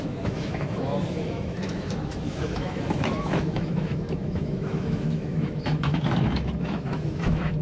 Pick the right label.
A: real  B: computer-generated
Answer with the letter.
B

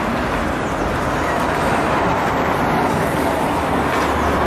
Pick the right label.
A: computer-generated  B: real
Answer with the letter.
B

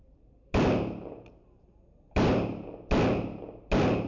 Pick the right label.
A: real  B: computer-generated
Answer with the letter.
B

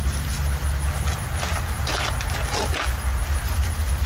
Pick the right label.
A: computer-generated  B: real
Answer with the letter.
B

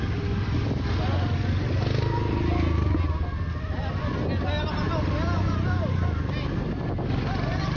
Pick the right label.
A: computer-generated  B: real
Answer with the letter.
B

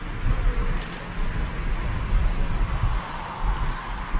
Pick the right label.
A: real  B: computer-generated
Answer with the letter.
B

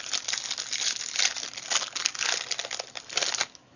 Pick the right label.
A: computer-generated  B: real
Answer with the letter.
B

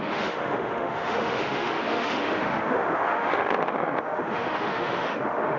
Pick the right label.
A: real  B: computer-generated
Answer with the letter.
B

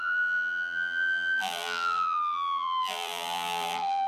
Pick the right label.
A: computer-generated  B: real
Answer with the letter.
A